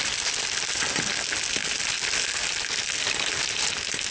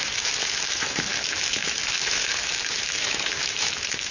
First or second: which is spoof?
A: second